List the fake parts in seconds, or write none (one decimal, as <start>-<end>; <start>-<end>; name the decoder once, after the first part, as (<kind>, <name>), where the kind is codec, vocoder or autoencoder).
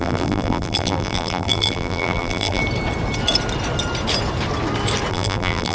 0.0-2.6 (vocoder, BigVGAN v2); 5.1-5.7